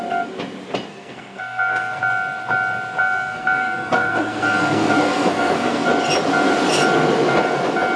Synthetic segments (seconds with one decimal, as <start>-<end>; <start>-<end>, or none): 0.9-2.0; 3.0-5.9